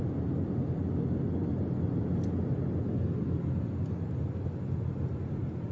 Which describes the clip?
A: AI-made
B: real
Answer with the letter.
B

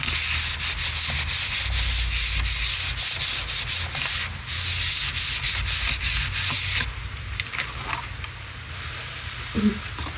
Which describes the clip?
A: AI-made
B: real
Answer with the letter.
B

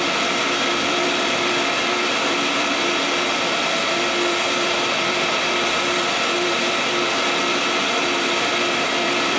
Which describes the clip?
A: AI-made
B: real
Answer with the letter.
A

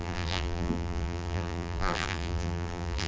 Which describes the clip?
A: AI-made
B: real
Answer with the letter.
A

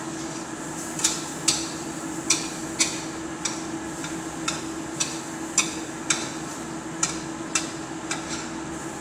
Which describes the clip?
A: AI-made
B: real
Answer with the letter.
B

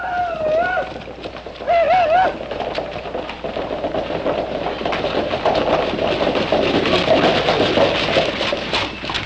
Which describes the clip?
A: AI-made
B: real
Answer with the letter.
B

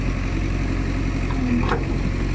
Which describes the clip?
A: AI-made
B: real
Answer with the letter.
B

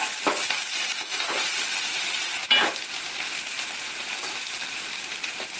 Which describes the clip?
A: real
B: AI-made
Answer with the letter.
A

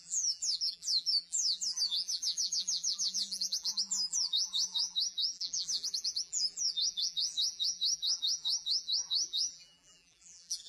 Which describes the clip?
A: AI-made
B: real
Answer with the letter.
A